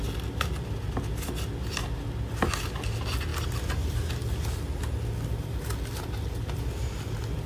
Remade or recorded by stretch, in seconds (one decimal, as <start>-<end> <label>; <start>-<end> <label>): 0.0-7.5 recorded